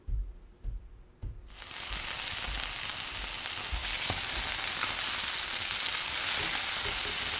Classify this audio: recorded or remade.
recorded